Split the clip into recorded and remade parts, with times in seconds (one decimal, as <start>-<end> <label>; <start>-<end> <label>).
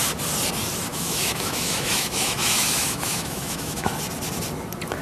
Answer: 0.0-0.9 recorded; 0.9-3.9 remade; 3.9-5.0 recorded